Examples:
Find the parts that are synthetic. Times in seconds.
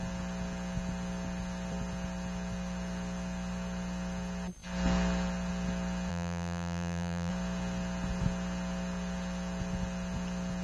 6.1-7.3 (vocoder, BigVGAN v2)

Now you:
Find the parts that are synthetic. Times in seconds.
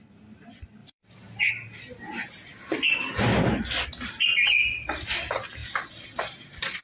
0.8-1.5 (vocoder, BigVGAN v2); 5.6-6.8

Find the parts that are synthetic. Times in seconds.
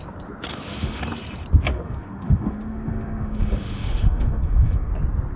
0.5-1.0 (autoencoder, DAC-VAE); 1.7-4.9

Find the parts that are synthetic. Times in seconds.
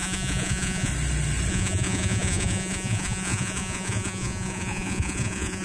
0.0-0.9 (vocoder, Vocos); 1.5-5.6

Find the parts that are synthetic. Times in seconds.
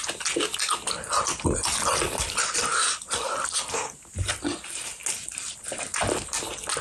none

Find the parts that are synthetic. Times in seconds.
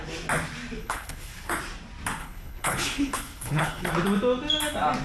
0.8-1.5 (codec, HILCodec); 2.2-3.9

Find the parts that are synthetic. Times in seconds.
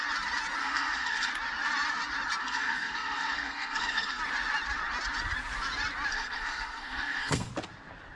0.6-1.3 (codec, SNAC); 2.4-4.2; 6.1-7.5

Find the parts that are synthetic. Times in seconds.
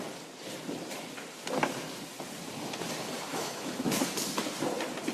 3.3-4.0 (autoencoder, DAC-VAE)